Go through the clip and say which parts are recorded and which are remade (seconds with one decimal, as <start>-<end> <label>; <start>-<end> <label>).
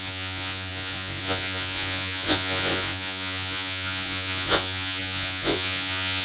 0.0-6.2 remade